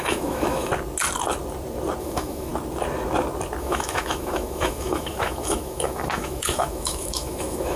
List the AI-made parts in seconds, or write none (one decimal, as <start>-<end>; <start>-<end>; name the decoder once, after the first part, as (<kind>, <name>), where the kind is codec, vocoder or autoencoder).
0.0-0.7 (autoencoder, DAC-VAE); 2.0-2.5; 3.6-7.8